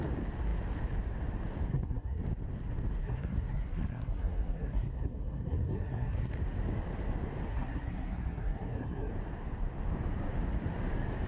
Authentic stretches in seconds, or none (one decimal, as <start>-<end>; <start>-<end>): 0.0-1.7; 2.2-3.0; 6.3-7.5; 9.1-11.3